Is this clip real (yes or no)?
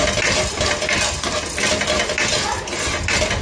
yes